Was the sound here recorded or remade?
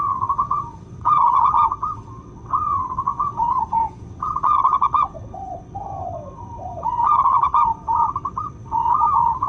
remade